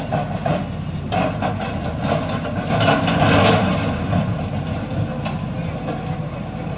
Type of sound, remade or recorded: recorded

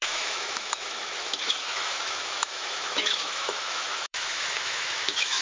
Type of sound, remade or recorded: remade